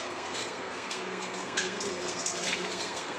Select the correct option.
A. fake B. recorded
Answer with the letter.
A